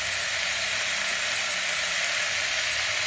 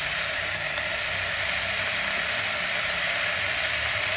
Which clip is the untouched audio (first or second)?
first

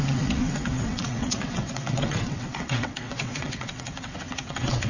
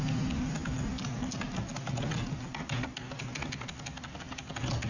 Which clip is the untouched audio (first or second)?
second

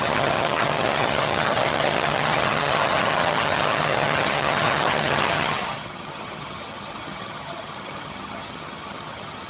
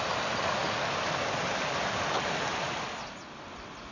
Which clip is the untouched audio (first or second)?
second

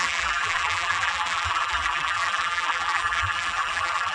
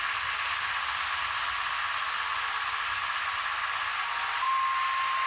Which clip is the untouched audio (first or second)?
second